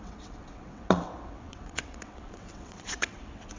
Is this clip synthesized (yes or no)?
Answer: yes